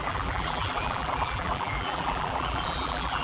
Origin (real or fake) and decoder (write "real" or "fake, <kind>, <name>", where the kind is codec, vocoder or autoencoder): fake, vocoder, BigVGAN v2